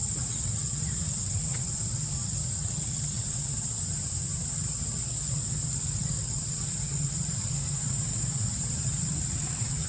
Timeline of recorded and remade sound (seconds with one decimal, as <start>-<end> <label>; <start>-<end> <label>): 0.0-3.8 remade; 3.8-4.4 recorded; 4.4-9.9 remade